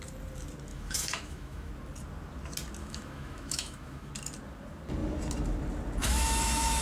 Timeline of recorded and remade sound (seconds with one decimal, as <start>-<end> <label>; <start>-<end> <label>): 0.0-0.7 recorded; 0.7-1.7 remade; 1.7-2.8 recorded; 2.8-4.1 remade; 4.1-6.0 recorded; 6.0-6.8 remade